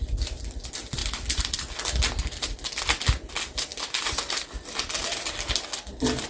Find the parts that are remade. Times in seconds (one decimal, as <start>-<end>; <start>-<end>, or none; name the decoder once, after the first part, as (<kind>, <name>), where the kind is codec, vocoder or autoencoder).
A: none